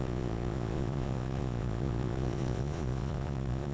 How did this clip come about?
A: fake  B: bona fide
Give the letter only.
A